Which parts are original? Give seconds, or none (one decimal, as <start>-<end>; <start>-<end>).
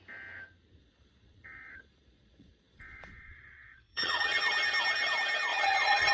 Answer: 0.0-0.8; 4.5-5.5